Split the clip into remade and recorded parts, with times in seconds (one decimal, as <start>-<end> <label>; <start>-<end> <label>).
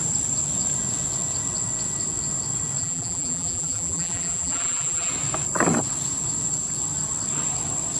0.0-2.8 recorded; 2.8-5.1 remade; 5.1-8.0 recorded